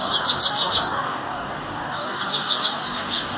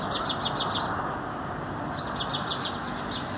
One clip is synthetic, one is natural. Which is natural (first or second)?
second